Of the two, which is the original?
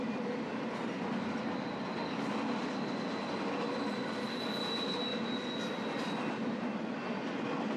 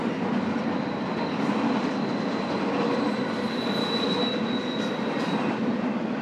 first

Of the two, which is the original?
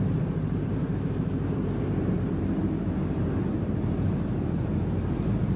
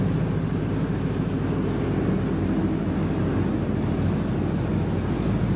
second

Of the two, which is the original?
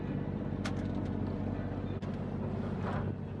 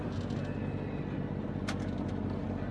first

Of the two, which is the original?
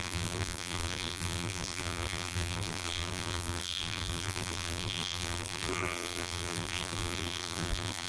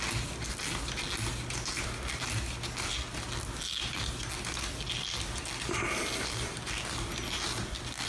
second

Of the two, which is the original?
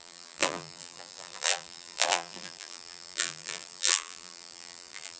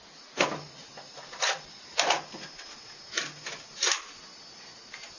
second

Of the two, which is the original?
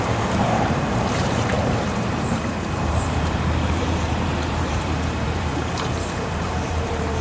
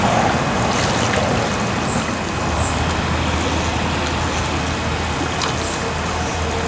second